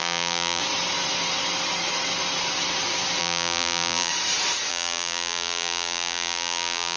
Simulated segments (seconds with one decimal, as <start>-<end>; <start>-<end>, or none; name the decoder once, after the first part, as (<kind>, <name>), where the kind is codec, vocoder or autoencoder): 0.0-0.6 (vocoder, BigVGAN v2); 3.2-4.1; 4.7-7.0

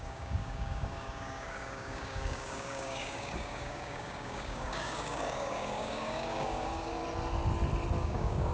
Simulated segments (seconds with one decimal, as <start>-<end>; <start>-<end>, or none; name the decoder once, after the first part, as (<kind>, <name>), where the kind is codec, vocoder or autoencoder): 0.0-7.0 (codec, DAC); 8.0-8.5

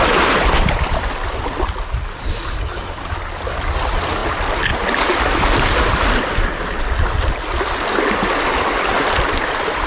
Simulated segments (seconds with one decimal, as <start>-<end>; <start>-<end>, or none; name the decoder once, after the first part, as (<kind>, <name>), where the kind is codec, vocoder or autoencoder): none

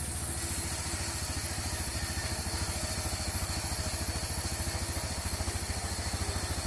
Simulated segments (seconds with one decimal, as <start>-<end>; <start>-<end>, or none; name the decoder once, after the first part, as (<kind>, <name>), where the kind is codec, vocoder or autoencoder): none

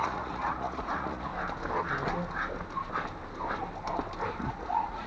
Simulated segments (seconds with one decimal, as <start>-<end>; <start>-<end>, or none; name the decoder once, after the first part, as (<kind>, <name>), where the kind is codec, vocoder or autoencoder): 0.0-1.3 (vocoder, Vocos); 4.4-5.1

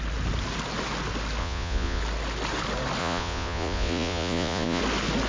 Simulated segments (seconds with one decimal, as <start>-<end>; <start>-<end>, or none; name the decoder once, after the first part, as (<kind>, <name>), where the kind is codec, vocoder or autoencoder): 1.4-2.0 (vocoder, Vocos); 3.0-4.8